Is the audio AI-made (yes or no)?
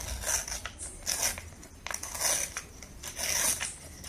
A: no